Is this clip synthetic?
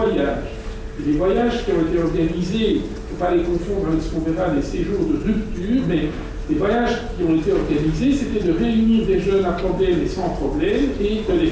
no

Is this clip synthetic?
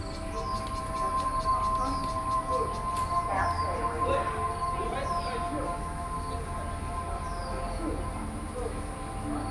no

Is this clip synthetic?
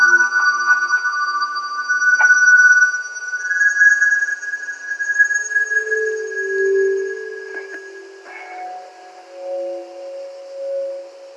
no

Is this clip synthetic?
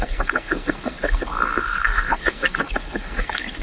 yes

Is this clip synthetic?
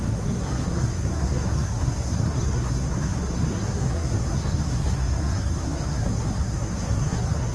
yes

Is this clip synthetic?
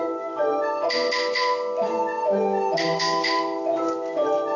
no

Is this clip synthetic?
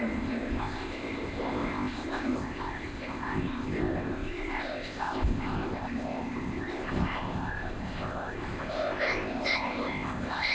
yes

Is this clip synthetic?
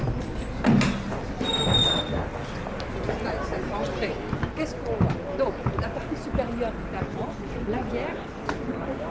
no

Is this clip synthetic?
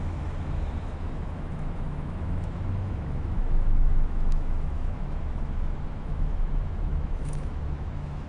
yes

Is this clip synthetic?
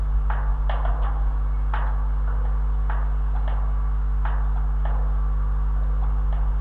no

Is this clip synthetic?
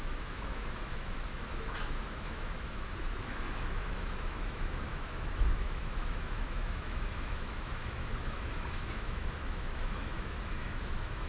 yes